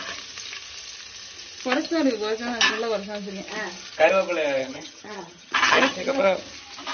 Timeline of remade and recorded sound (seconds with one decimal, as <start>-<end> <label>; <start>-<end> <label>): 0.0-4.6 recorded; 4.6-6.4 remade; 6.4-6.9 recorded